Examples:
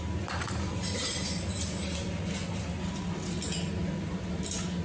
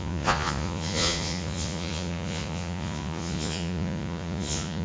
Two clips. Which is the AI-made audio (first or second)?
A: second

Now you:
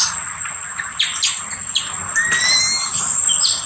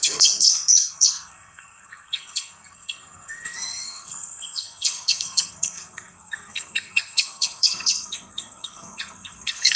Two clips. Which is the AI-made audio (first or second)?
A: second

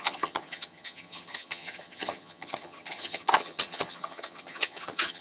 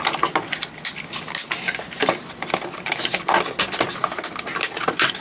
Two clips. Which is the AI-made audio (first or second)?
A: first